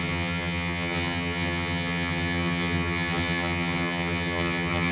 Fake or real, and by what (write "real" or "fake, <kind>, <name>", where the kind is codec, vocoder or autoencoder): fake, vocoder, HiFi-GAN